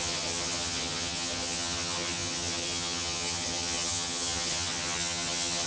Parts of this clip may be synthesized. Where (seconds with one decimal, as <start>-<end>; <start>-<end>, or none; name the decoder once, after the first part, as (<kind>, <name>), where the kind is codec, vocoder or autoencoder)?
0.0-5.7 (vocoder, HiFi-GAN)